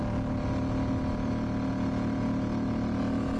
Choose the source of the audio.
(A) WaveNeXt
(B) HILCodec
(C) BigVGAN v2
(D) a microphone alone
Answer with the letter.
D